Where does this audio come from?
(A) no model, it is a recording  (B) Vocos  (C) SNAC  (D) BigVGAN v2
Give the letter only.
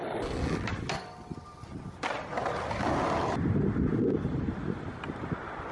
A